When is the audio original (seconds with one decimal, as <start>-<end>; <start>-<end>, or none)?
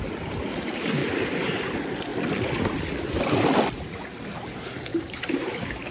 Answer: 0.0-1.0; 1.7-4.9; 5.5-5.9